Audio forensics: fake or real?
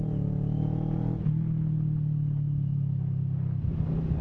real